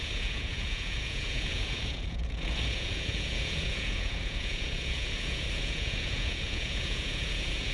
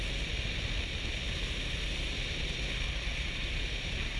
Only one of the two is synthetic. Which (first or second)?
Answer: first